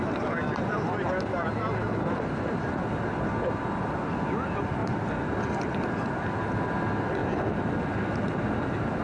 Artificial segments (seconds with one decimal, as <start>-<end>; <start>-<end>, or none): none